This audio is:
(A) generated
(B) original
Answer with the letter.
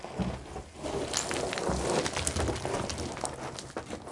B